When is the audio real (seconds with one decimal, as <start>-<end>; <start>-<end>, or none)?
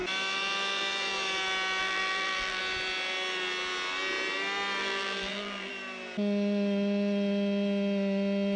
0.0-1.8; 2.6-4.8; 5.7-8.6